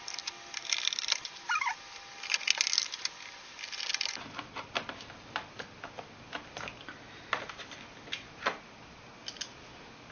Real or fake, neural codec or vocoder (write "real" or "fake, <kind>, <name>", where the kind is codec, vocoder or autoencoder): real